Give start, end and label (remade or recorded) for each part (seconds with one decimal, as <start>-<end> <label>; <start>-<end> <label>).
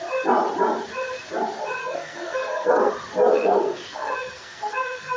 0.0-1.8 recorded; 1.8-2.9 remade; 2.9-3.3 recorded; 3.3-5.2 remade